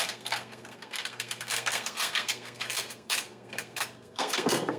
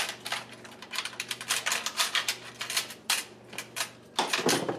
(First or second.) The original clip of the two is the second